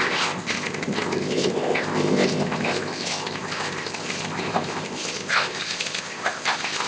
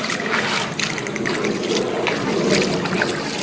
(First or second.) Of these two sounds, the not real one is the first